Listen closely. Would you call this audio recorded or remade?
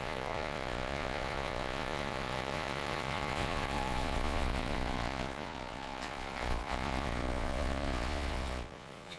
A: remade